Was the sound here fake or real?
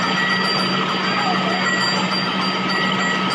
real